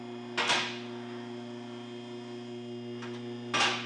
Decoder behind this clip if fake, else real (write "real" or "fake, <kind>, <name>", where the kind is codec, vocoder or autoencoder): real